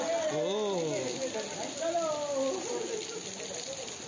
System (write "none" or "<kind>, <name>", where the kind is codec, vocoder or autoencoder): none